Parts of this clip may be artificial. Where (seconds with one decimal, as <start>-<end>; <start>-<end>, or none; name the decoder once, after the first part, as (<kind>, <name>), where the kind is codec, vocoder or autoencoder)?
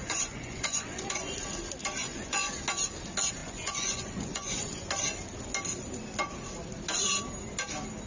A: 0.0-1.3 (vocoder, Vocos); 2.0-2.5; 3.4-4.8